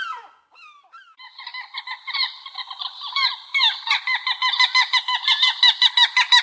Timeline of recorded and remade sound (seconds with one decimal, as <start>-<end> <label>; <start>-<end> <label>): 0.0-6.4 recorded